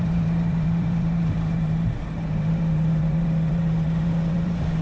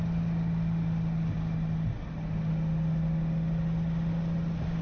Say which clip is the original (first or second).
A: second